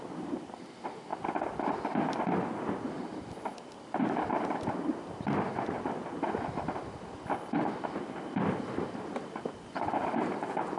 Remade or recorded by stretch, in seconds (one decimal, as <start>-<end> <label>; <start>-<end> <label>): 0.0-10.8 recorded